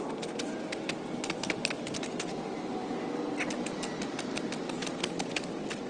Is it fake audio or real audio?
real